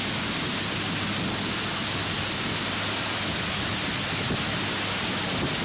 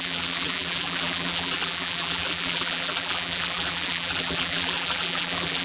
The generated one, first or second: second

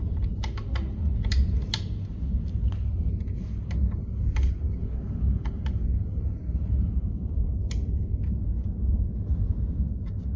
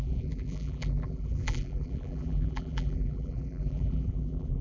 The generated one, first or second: second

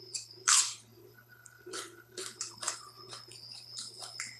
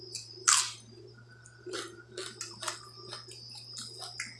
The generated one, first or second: first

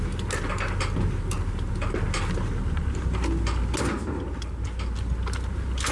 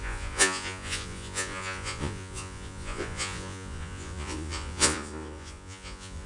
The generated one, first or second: second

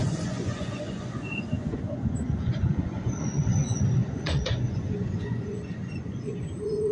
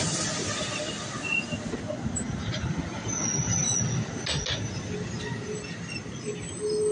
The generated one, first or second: first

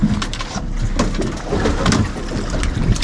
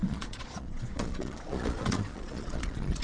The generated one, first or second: second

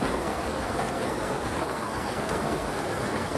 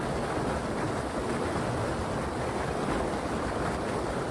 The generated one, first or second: first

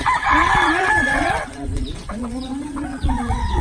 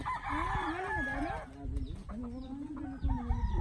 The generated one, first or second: first